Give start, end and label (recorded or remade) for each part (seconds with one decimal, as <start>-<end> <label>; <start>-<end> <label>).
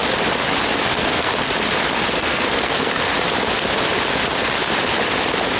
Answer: 0.0-0.9 recorded; 0.9-1.3 remade; 1.3-2.1 recorded; 2.1-3.1 remade; 3.1-5.6 recorded